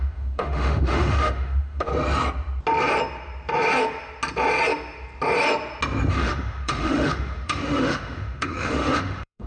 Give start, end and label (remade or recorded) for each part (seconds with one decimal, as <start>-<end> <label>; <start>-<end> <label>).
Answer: 0.0-1.9 remade; 1.9-6.1 recorded; 6.1-9.5 remade